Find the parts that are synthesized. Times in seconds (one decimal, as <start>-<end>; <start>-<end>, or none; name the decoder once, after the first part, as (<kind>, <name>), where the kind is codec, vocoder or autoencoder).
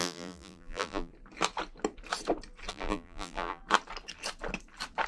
0.0-1.1 (vocoder, BigVGAN v2); 2.7-3.6